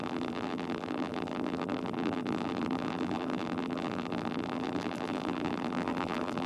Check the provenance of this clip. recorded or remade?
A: remade